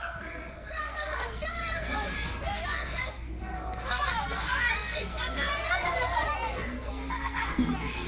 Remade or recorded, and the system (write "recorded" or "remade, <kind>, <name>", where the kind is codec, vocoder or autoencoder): remade, codec, SNAC